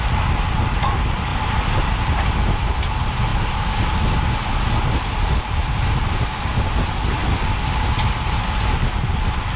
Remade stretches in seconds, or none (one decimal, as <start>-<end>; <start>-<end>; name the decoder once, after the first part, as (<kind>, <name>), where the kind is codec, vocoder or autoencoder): none